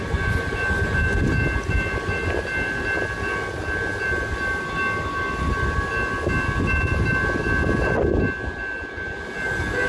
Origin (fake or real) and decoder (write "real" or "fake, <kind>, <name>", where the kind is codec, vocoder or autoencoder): real